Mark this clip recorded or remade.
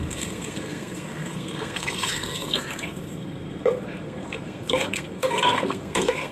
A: remade